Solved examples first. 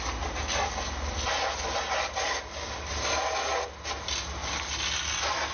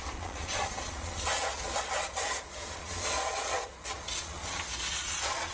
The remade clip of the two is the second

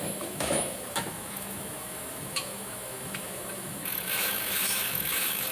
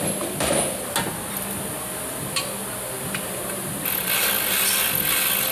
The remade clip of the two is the first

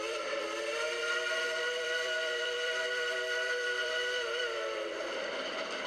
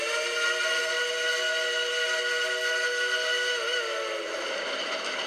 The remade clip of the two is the first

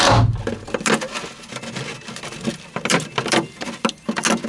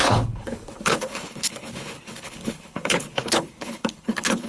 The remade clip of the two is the second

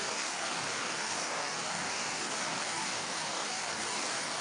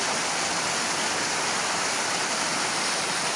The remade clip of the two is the first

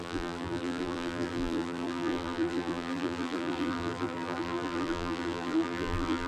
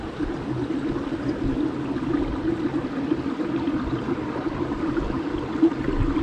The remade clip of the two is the first